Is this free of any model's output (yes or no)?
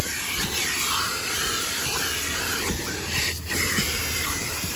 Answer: no